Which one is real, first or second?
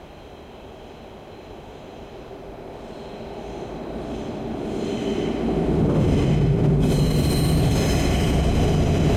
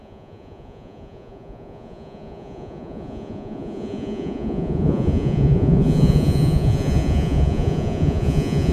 first